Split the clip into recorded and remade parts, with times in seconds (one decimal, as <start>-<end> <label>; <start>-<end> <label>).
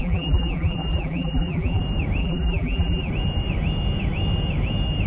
0.0-1.8 remade; 1.8-2.2 recorded; 2.2-3.1 remade; 3.1-5.1 recorded